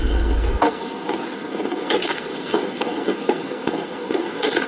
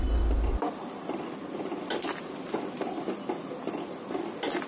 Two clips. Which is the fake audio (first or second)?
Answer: first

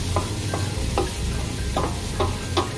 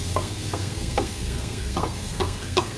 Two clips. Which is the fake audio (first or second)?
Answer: second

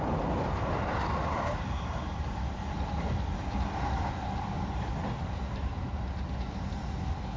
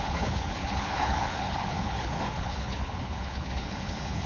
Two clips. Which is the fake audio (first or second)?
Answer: second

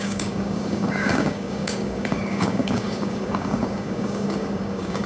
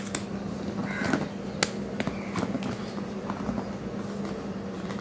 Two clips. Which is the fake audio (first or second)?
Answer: first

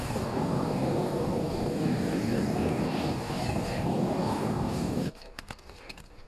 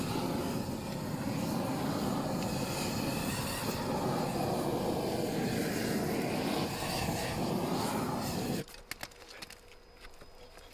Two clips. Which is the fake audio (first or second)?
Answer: first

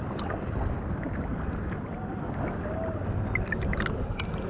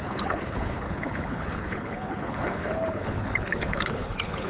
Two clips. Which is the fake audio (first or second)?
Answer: second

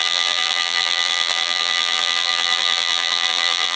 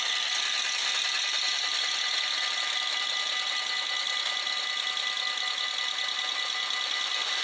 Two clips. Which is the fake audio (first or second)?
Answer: first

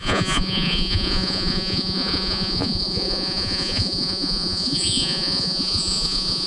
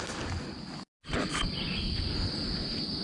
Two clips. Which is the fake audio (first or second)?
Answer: first